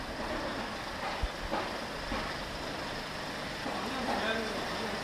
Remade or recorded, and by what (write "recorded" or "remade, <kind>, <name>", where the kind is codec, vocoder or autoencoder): recorded